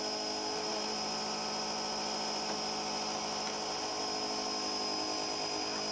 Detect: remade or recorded recorded